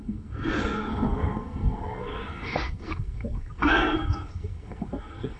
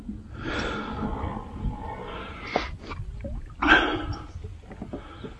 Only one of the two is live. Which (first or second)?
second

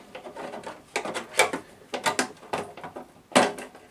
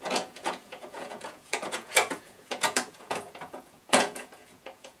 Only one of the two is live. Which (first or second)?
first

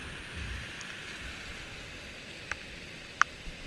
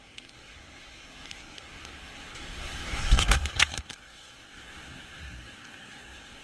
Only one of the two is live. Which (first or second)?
first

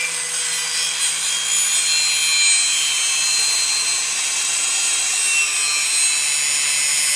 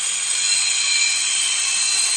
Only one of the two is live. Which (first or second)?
first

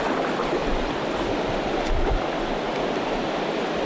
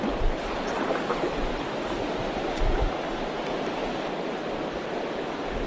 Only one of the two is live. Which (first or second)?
second